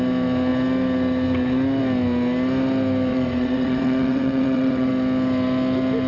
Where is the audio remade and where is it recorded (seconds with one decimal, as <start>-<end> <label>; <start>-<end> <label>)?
0.0-3.1 recorded; 3.1-4.9 remade; 4.9-6.1 recorded